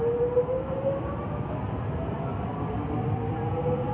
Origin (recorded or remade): recorded